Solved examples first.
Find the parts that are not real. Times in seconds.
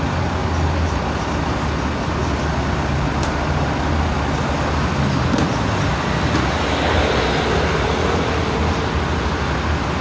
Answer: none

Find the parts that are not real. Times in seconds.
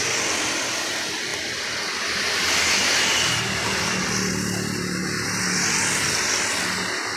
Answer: none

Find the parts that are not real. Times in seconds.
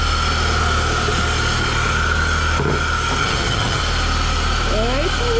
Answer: 3.2-3.8 (vocoder, HiFi-GAN)